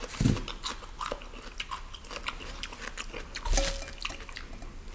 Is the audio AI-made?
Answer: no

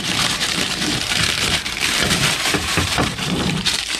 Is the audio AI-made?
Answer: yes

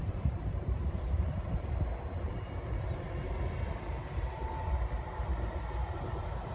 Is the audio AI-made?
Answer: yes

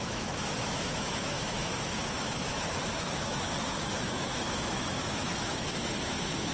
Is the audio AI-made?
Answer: yes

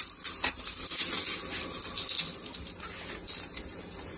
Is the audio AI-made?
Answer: no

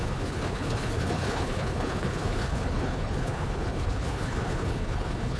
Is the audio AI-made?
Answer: yes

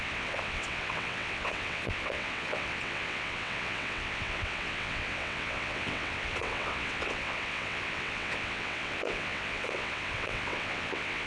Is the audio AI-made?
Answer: yes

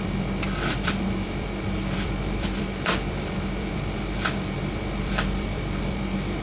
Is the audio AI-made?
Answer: yes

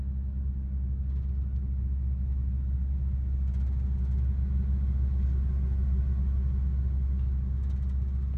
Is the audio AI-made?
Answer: no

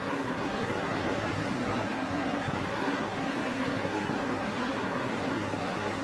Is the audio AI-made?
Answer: yes